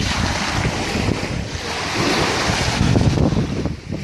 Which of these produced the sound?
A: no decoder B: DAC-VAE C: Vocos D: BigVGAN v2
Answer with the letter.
D